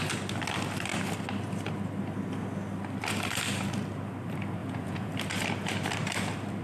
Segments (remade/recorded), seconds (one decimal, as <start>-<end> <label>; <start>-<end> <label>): 0.0-4.6 recorded; 4.6-5.1 remade; 5.1-6.6 recorded